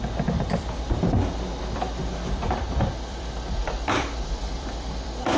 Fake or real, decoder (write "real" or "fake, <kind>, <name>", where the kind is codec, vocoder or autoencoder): fake, vocoder, BigVGAN v2